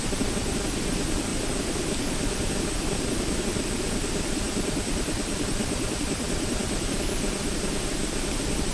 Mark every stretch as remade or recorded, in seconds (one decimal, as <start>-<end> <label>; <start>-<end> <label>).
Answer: 0.0-8.7 recorded